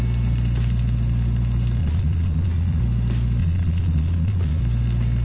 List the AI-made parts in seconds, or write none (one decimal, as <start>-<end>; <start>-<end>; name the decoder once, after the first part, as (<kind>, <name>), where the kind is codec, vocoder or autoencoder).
1.8-2.8 (vocoder, Vocos); 3.4-4.6